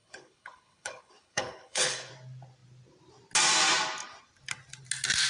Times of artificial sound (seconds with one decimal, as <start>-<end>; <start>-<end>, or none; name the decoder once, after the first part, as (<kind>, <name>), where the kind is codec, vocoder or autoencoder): 0.0-2.1 (codec, HILCodec)